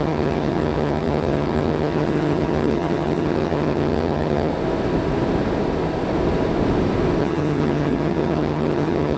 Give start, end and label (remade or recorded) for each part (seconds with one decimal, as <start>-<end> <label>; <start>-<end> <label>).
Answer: 0.0-4.5 remade; 4.5-7.2 recorded; 7.2-9.2 remade